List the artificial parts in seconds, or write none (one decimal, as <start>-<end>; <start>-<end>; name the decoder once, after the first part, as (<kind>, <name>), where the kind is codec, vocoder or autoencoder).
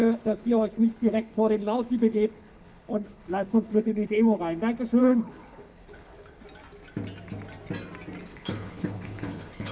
0.0-4.4 (codec, HILCodec); 5.0-6.4; 8.3-9.7